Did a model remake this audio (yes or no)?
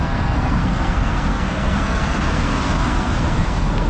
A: yes